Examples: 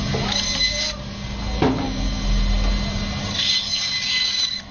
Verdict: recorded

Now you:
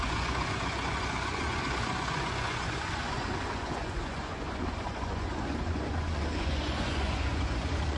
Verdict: remade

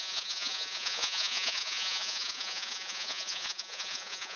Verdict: remade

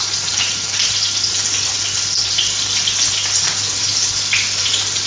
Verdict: recorded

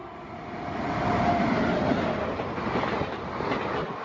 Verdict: recorded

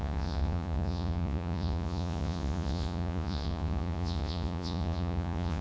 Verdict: remade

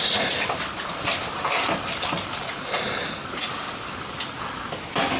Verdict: recorded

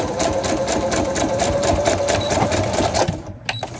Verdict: recorded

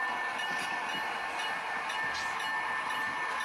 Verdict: recorded